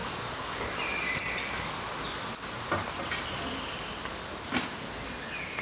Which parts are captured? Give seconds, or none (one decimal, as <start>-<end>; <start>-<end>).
0.6-5.6